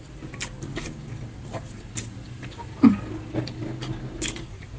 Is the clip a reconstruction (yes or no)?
no